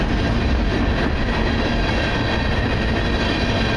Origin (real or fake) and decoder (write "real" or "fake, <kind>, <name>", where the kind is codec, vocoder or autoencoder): real